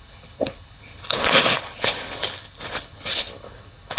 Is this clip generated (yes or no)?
yes